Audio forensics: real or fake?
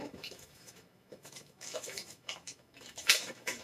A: fake